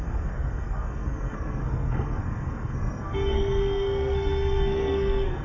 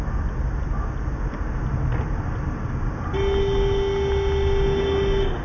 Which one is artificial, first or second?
first